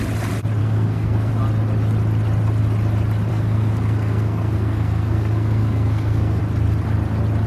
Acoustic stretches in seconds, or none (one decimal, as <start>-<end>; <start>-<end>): 0.0-0.6; 1.3-3.3; 6.4-7.5